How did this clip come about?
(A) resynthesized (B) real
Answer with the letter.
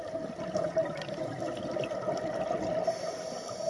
B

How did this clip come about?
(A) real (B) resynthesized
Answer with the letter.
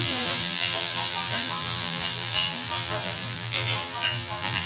B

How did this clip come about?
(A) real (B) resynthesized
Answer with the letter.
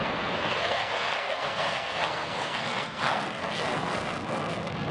B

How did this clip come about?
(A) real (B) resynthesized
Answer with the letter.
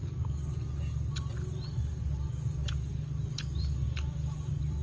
A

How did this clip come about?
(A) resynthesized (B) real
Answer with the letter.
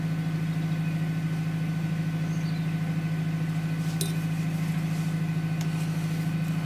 B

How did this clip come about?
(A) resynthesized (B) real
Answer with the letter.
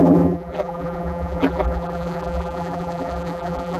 A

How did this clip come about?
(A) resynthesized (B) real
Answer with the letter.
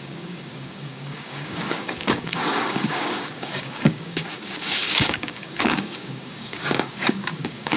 A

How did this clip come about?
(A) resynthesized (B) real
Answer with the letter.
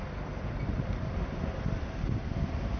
B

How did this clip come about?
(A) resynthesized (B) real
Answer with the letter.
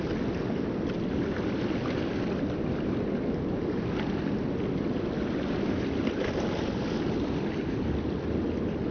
B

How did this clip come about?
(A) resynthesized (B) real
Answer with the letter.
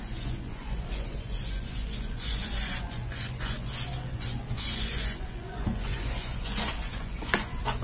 A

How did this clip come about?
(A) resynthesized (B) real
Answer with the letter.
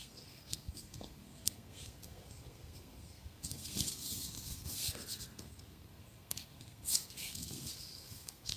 A